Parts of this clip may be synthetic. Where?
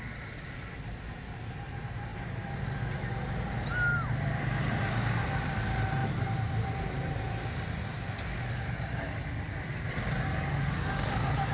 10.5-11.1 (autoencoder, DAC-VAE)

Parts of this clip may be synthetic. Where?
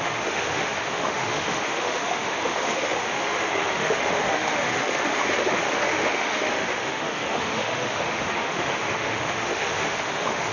0.0-10.5 (autoencoder, DAC-VAE)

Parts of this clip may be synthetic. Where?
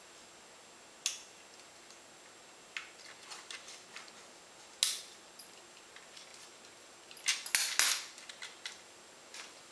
none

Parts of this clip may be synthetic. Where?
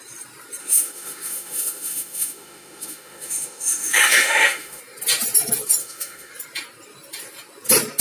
0.6-4.8 (autoencoder, DAC-VAE); 5.8-6.3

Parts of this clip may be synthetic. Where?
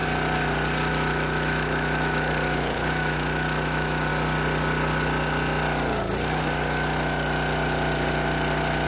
0.9-4.1 (autoencoder, DAC-VAE)